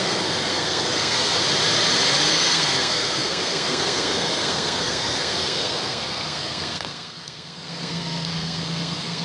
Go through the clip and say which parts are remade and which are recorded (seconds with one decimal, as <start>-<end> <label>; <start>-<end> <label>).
0.0-1.4 remade; 1.4-2.3 recorded; 2.3-9.2 remade